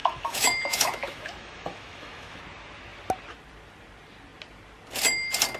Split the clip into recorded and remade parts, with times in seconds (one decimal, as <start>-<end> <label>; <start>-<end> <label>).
0.0-2.4 remade; 2.4-5.6 recorded